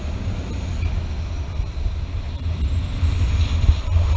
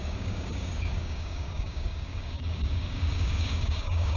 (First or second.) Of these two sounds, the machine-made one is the second